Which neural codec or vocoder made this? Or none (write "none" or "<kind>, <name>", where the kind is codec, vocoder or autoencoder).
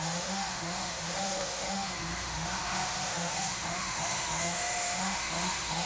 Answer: autoencoder, DAC-VAE